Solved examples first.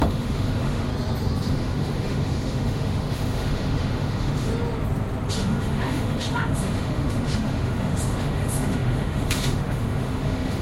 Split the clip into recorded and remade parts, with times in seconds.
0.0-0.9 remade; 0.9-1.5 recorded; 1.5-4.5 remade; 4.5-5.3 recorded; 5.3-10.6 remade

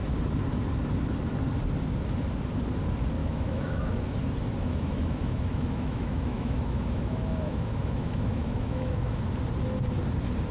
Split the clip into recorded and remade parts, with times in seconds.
0.0-3.2 recorded; 3.2-4.0 remade; 4.0-4.6 recorded; 4.6-9.2 remade; 9.2-10.5 recorded

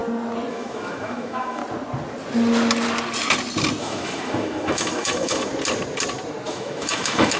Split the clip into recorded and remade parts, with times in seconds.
0.0-0.5 recorded; 0.5-1.6 remade; 1.6-3.8 recorded; 3.8-5.5 remade; 5.5-6.5 recorded; 6.5-7.4 remade